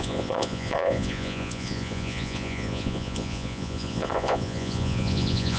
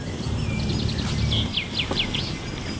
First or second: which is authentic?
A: second